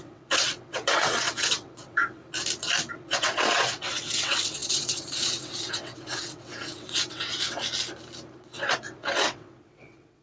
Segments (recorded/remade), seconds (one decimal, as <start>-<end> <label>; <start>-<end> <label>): 0.0-2.2 remade; 2.2-2.9 recorded; 2.9-7.6 remade; 7.6-8.3 recorded; 8.3-10.2 remade

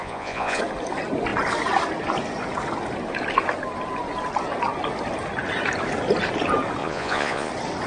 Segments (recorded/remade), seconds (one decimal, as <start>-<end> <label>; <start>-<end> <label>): 0.0-0.6 remade; 0.6-6.8 recorded; 6.8-7.5 remade; 7.5-7.9 recorded

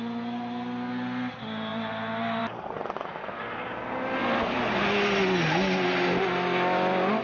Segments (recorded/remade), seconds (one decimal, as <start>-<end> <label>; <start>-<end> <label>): 0.0-7.2 recorded

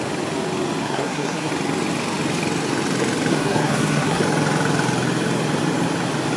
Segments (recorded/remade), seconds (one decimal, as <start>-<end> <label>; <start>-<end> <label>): 0.0-0.8 recorded; 0.8-1.5 remade; 1.5-3.3 recorded; 3.3-4.2 remade; 4.2-6.4 recorded

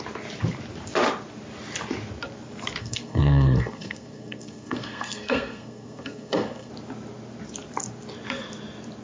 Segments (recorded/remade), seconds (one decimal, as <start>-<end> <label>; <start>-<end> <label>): 0.0-2.8 recorded; 2.8-6.7 remade; 6.7-9.0 recorded

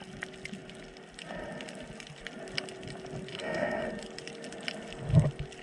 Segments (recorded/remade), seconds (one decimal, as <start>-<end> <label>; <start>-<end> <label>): 0.0-3.3 recorded; 3.3-3.9 remade; 3.9-5.6 recorded